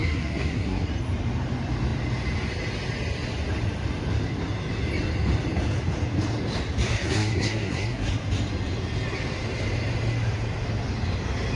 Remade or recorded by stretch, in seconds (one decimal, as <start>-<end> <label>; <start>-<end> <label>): 0.0-0.9 remade; 0.9-6.9 recorded; 6.9-8.1 remade; 8.1-11.6 recorded